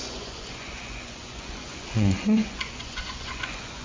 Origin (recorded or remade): remade